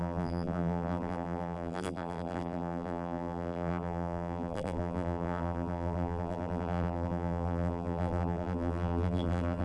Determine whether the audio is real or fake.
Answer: fake